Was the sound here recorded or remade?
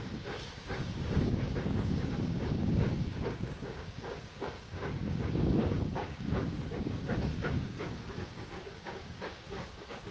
remade